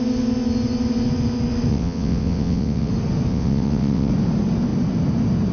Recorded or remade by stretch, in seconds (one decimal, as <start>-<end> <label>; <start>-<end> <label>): 0.0-1.7 recorded; 1.7-2.9 remade; 2.9-3.3 recorded; 3.3-4.1 remade; 4.1-5.5 recorded